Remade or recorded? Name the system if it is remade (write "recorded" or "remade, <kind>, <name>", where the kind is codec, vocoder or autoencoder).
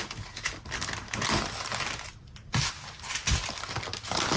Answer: recorded